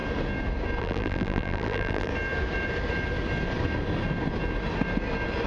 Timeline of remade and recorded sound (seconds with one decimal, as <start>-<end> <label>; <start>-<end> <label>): 0.0-0.8 recorded; 0.8-2.1 remade; 2.1-5.5 recorded